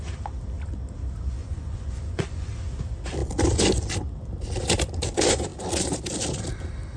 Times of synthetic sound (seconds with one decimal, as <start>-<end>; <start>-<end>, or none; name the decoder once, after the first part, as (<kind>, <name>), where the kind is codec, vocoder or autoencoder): 1.4-2.5 (vocoder, Vocos)